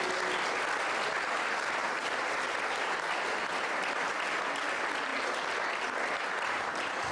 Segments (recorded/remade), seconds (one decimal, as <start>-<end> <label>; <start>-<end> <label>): 0.0-7.1 recorded

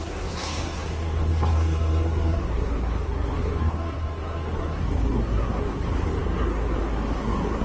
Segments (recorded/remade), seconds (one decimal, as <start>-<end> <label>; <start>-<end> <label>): 0.0-7.6 remade

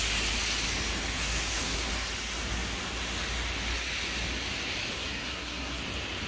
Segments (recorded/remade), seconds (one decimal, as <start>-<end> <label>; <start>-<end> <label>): 0.0-1.1 recorded; 1.1-1.9 remade; 1.9-4.9 recorded; 4.9-5.8 remade; 5.8-6.3 recorded

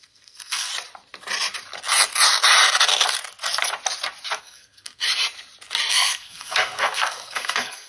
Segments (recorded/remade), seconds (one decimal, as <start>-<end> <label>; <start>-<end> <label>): 0.0-0.7 remade; 0.7-4.4 recorded; 4.4-5.0 remade; 5.0-5.9 recorded; 5.9-7.9 remade